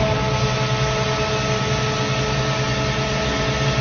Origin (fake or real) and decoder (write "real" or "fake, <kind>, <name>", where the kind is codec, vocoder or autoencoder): real